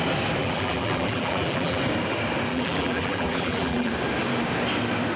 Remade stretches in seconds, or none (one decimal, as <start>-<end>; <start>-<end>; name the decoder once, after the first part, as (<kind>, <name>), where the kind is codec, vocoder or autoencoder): 0.4-1.8 (vocoder, BigVGAN v2); 2.5-3.9